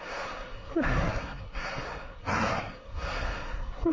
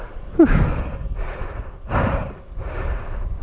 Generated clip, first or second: first